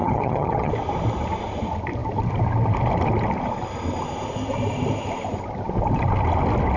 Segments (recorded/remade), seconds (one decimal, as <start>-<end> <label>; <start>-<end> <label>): 0.0-0.7 remade; 0.7-6.8 recorded